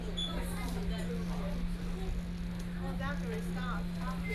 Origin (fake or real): real